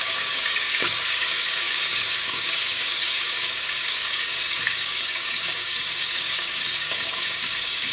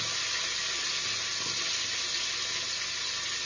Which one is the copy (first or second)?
first